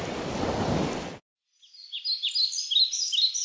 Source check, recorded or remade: recorded